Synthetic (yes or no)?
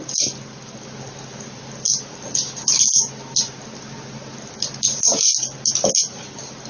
no